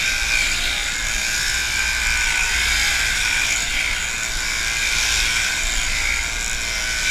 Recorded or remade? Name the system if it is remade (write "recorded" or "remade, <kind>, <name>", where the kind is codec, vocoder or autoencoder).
recorded